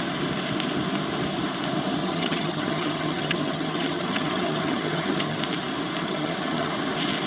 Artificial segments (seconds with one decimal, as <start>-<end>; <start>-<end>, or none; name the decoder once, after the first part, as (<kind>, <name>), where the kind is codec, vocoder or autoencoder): 2.0-5.4 (vocoder, HiFi-GAN); 6.0-6.7